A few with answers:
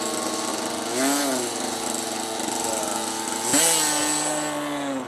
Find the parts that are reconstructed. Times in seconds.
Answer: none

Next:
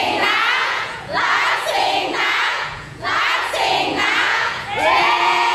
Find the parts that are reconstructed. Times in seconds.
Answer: 0.0-5.5 (vocoder, Vocos)

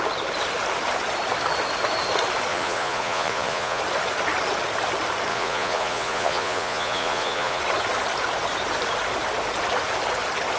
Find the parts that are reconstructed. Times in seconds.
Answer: 2.5-3.8 (vocoder, Vocos); 5.3-7.6

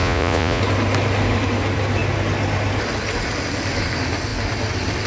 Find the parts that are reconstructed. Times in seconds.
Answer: 0.0-0.6 (vocoder, Vocos)